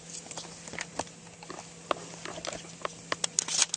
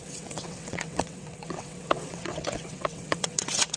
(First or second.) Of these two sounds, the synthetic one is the second